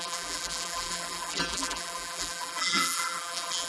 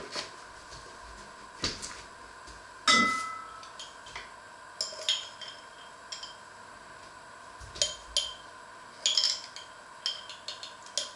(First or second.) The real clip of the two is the second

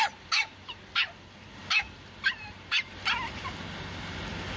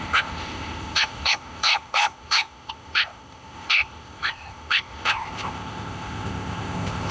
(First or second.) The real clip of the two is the first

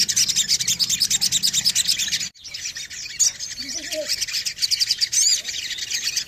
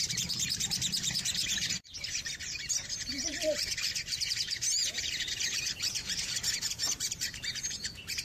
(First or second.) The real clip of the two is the first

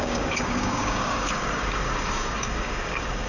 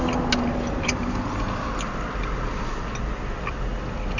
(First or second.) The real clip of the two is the second